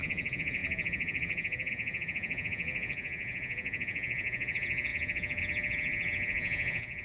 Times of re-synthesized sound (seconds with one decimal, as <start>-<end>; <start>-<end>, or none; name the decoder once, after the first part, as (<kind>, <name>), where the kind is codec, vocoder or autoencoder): 0.0-7.0 (vocoder, Vocos)